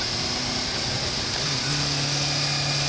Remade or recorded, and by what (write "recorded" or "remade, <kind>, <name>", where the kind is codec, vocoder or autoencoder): recorded